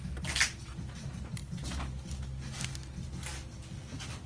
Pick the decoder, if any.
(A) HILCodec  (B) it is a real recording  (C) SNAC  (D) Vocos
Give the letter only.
B